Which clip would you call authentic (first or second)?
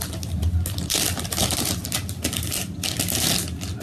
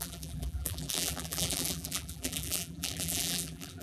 first